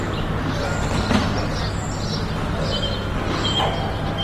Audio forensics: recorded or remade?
recorded